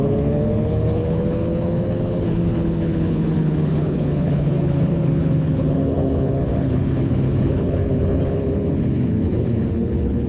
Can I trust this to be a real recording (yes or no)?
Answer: no